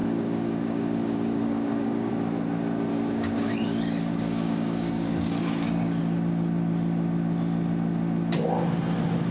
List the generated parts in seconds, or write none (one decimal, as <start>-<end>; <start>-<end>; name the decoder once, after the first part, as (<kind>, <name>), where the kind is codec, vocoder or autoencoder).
0.0-2.1 (codec, DAC); 2.9-6.0